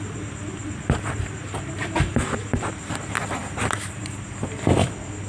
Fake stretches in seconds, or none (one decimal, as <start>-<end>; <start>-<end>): none